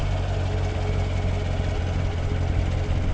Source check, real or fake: real